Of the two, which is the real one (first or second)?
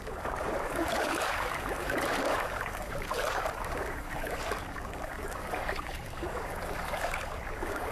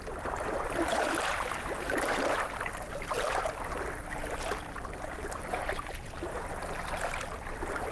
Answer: second